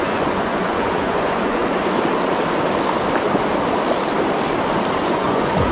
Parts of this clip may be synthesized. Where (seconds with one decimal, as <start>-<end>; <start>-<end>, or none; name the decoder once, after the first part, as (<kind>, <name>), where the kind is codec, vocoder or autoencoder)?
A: 0.0-1.6 (vocoder, Vocos); 5.0-5.7

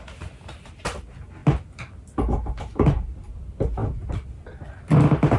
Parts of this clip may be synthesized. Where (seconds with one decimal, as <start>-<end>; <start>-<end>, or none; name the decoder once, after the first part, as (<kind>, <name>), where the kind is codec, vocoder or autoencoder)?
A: none

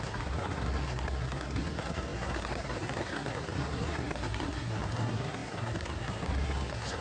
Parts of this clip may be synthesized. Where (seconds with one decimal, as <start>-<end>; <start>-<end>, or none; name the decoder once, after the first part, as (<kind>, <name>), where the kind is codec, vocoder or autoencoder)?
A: 0.0-7.0 (codec, SNAC)

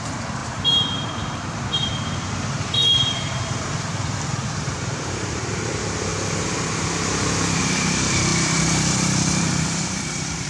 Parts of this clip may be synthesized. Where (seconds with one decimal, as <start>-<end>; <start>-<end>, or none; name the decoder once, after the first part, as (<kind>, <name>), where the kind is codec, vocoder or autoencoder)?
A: 0.0-6.1 (vocoder, BigVGAN v2); 7.6-10.5

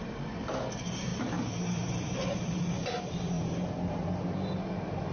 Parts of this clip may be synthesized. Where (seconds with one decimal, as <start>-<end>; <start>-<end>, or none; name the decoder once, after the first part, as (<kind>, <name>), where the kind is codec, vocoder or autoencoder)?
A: 1.1-4.2 (vocoder, BigVGAN v2)

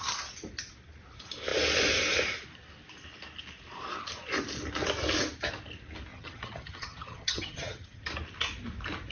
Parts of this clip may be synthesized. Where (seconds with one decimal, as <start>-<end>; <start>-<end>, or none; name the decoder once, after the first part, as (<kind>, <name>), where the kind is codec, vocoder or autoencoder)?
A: 6.1-8.0 (vocoder, HiFi-GAN)